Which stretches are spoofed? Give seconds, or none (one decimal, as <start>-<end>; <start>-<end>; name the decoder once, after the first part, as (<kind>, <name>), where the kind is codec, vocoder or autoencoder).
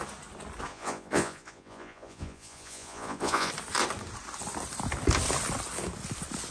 0.7-3.5 (vocoder, Vocos)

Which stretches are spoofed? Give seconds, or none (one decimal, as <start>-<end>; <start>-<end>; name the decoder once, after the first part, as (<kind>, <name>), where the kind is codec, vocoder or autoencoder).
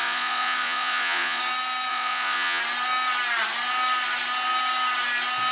0.0-1.4 (vocoder, Vocos); 1.9-2.6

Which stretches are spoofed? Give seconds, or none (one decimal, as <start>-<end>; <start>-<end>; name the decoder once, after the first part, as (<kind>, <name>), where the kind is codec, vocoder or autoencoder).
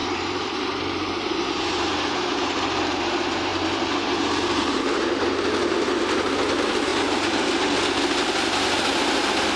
0.0-2.0 (vocoder, BigVGAN v2); 3.5-4.8; 6.9-7.8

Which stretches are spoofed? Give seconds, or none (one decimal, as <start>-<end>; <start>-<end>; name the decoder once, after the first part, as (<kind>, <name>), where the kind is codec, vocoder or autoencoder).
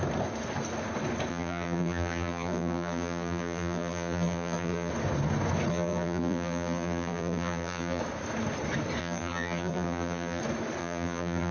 1.3-4.9 (vocoder, BigVGAN v2); 5.7-8.0; 9.0-10.4; 10.8-11.5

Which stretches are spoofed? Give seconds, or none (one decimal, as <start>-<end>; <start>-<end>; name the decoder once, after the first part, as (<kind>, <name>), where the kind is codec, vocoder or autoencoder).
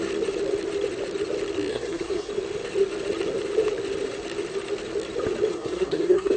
1.7-2.3 (codec, SNAC); 5.5-6.4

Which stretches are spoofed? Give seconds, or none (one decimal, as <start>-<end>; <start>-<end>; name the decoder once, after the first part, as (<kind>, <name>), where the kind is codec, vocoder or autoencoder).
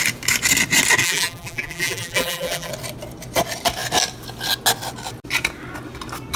1.0-2.7 (vocoder, BigVGAN v2)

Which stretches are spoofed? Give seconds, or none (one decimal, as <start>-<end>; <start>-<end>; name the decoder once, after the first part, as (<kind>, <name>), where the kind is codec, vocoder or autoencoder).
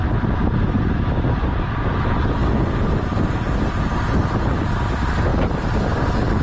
none